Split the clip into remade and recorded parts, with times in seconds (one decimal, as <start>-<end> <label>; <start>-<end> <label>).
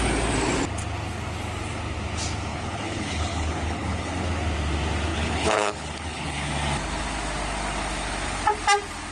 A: 0.0-2.5 recorded; 2.5-4.2 remade; 4.2-5.1 recorded; 5.1-6.5 remade; 6.5-9.1 recorded